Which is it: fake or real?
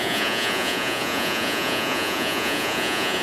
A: fake